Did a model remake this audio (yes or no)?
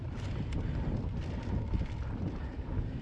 no